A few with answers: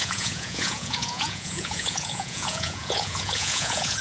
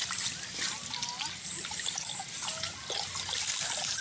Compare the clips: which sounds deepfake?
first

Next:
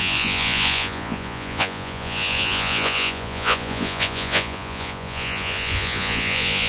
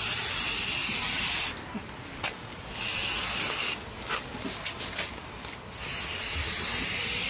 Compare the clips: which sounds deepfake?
first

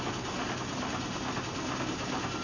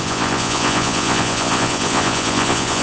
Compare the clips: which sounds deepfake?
second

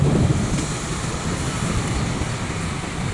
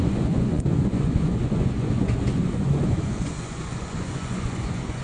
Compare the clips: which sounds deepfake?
second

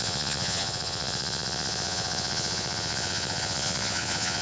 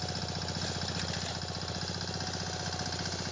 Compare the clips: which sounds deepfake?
first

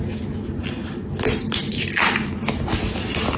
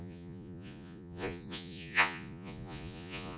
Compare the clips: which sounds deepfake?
second